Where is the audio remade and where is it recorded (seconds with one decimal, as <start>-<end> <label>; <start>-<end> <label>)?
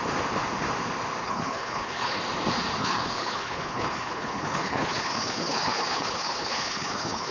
0.0-1.2 recorded; 1.2-2.2 remade; 2.2-2.8 recorded; 2.8-7.3 remade